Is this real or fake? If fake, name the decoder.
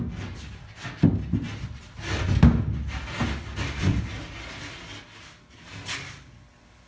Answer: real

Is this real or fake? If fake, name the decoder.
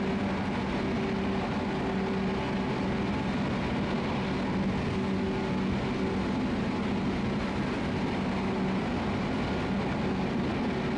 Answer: real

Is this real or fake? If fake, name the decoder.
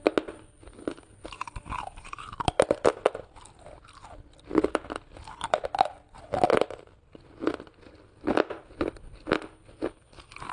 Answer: real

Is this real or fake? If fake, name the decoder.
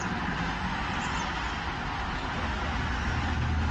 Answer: real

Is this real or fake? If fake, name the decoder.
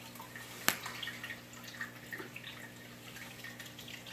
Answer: real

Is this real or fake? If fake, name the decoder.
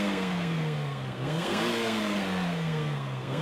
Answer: fake, codec, SNAC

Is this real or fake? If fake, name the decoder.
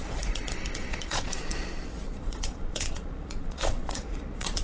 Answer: fake, vocoder, Vocos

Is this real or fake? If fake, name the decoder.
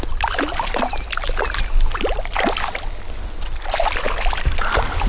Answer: real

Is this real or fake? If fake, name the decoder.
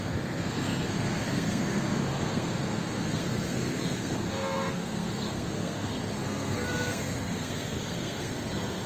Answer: fake, codec, SNAC